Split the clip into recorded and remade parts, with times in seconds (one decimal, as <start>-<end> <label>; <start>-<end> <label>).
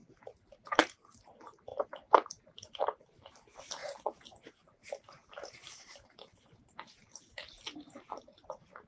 0.0-3.8 remade; 3.8-4.5 recorded; 4.5-8.9 remade